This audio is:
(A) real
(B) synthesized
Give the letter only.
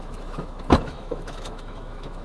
B